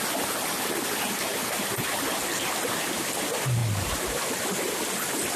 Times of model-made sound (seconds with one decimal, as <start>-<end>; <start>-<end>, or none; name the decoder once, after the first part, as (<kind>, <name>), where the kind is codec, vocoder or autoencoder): none